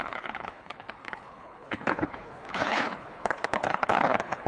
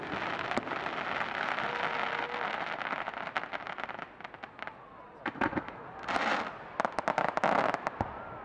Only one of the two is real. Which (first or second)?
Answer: second